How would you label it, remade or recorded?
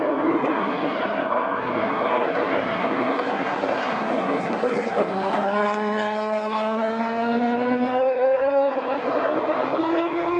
remade